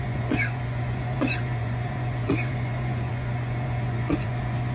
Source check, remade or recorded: remade